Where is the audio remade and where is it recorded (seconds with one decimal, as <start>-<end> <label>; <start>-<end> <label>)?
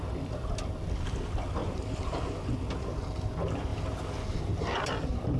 0.0-5.4 recorded